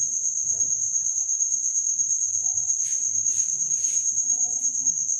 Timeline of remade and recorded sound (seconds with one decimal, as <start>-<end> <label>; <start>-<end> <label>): 0.0-5.2 recorded